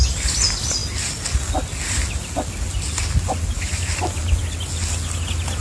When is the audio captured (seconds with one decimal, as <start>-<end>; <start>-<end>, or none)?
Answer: 0.0-5.6